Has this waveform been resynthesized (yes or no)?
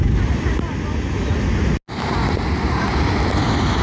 no